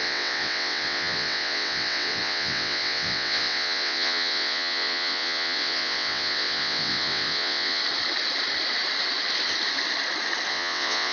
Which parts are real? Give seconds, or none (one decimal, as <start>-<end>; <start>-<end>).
7.8-10.5